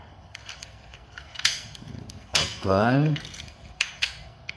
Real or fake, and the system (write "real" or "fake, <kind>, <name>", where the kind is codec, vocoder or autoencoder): fake, codec, SNAC